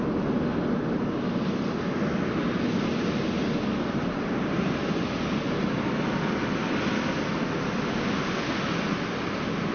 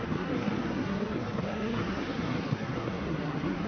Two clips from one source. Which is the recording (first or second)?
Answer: first